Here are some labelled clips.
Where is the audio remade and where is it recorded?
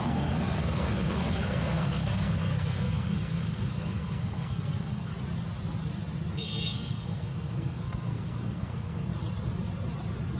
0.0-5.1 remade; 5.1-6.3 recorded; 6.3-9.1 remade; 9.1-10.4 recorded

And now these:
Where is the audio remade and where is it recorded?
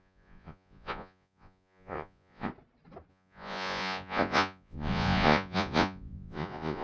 0.0-2.5 remade; 2.5-3.1 recorded; 3.1-6.8 remade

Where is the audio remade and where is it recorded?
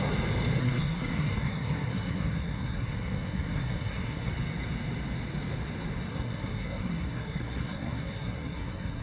0.0-0.6 recorded; 0.6-4.3 remade; 4.3-6.1 recorded; 6.1-9.0 remade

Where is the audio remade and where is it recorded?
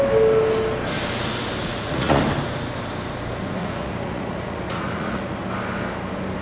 0.0-1.6 recorded; 1.6-2.2 remade; 2.2-3.6 recorded; 3.6-5.4 remade; 5.4-6.4 recorded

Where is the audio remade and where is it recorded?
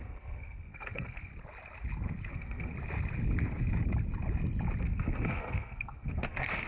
0.0-1.3 remade; 1.3-2.3 recorded; 2.3-2.7 remade; 2.7-4.8 recorded; 4.8-6.7 remade